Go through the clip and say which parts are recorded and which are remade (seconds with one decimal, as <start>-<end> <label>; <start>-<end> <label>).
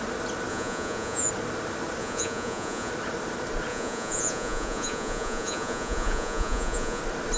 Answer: 0.0-0.5 recorded; 0.5-1.3 remade; 1.3-2.0 recorded; 2.0-2.9 remade; 2.9-3.7 recorded; 3.7-7.0 remade; 7.0-7.4 recorded